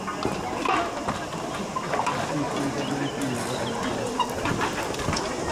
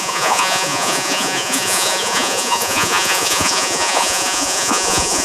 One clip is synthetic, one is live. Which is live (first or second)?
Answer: first